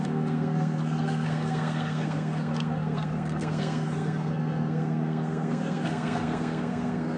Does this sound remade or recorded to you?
remade